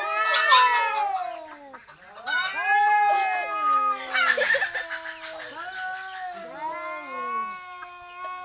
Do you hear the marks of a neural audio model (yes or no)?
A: no